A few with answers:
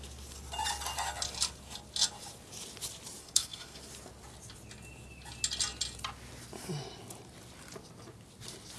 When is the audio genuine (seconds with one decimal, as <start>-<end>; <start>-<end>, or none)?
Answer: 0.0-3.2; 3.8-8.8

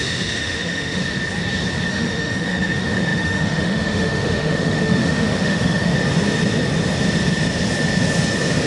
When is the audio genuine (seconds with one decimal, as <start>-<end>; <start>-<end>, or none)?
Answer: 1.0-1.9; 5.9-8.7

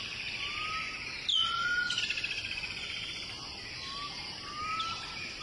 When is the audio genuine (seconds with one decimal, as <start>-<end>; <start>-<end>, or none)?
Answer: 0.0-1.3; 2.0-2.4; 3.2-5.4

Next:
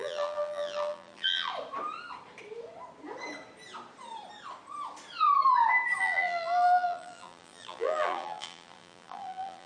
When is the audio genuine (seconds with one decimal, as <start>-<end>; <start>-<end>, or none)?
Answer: 1.5-6.0

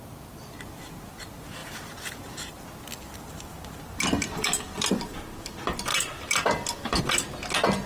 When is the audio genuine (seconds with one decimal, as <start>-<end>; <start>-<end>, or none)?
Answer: 0.0-1.6; 4.9-5.9; 7.0-7.9

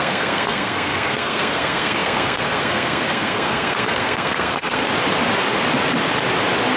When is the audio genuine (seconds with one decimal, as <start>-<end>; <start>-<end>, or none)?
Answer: 4.8-6.8

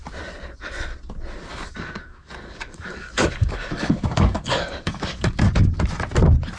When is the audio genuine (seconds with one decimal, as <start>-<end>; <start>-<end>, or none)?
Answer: 0.0-1.5; 5.5-6.6

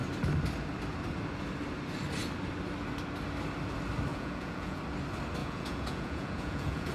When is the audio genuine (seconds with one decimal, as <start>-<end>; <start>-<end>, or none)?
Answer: 0.0-4.1; 4.8-5.4